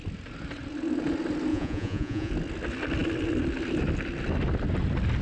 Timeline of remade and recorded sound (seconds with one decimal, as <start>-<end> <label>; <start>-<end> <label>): 0.0-1.5 recorded; 1.5-2.3 remade; 2.3-5.2 recorded